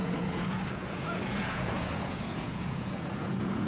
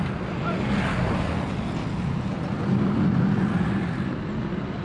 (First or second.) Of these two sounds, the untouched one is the second